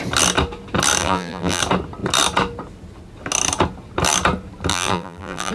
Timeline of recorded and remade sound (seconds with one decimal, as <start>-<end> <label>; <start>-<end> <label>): 0.0-1.0 recorded; 1.0-1.6 remade; 1.6-4.7 recorded; 4.7-5.5 remade

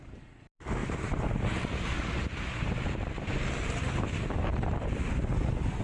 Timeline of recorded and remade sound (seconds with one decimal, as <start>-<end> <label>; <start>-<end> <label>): 0.0-0.8 recorded; 0.8-3.5 remade; 3.5-4.5 recorded; 4.5-5.1 remade; 5.1-5.8 recorded

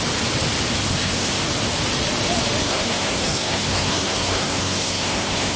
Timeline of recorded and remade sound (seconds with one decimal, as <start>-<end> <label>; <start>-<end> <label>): 0.0-0.9 recorded; 0.9-1.4 remade; 1.4-2.6 recorded; 2.6-5.6 remade

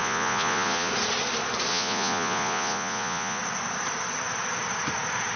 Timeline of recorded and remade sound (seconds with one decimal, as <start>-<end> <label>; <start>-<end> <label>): 0.0-0.9 remade; 0.9-1.7 recorded; 1.7-3.4 remade; 3.4-5.4 recorded